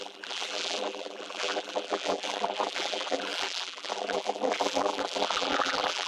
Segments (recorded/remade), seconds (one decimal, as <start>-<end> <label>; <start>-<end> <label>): 0.0-6.1 remade